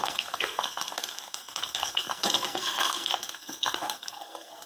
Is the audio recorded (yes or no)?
no